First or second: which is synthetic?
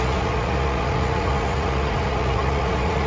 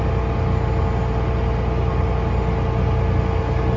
first